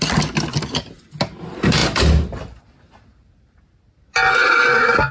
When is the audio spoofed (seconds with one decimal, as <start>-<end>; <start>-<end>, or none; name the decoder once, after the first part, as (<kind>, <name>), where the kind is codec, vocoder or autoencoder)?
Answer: none